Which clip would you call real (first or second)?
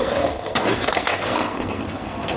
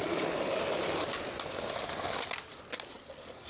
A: second